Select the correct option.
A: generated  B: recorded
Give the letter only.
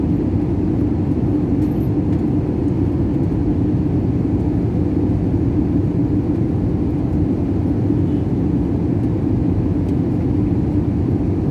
B